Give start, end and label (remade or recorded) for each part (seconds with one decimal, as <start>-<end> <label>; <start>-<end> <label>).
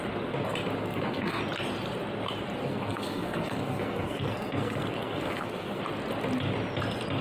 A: 0.0-0.8 recorded; 0.8-1.4 remade; 1.4-2.6 recorded; 2.6-5.8 remade; 5.8-7.2 recorded